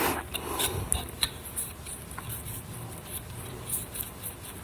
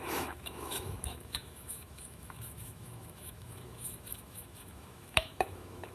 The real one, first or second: first